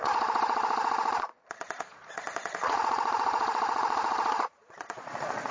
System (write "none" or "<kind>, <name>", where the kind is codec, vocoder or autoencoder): vocoder, Vocos